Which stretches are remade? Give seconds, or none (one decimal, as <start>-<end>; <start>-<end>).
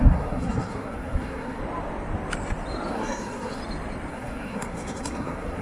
0.0-1.6; 2.9-3.6; 4.1-5.6